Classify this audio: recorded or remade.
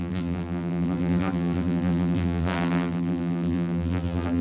remade